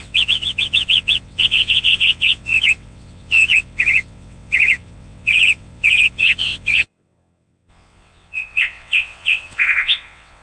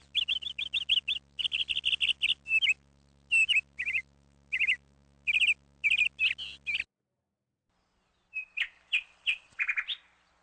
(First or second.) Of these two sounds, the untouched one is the second